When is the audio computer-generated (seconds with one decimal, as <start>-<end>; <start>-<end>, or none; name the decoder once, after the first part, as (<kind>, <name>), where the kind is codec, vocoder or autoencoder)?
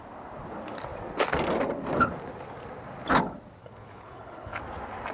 3.6-4.6 (codec, HILCodec)